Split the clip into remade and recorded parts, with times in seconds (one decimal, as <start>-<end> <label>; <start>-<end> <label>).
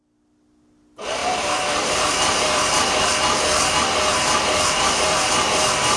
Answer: 0.0-1.2 recorded; 1.2-3.0 remade; 3.0-4.1 recorded; 4.1-6.0 remade